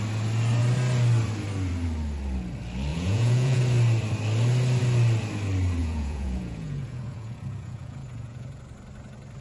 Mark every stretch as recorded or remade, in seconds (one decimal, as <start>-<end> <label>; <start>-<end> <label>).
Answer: 0.0-2.9 recorded; 2.9-3.6 remade; 3.6-5.8 recorded; 5.8-8.6 remade; 8.6-9.4 recorded